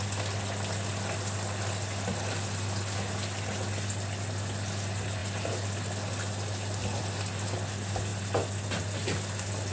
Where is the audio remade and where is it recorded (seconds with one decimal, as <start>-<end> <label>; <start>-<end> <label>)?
0.0-8.1 recorded; 8.1-9.7 remade